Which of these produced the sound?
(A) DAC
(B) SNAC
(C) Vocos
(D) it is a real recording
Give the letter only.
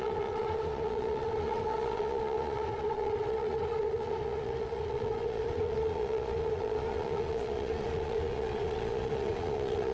C